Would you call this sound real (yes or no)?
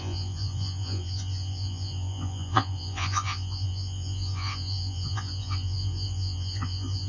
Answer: no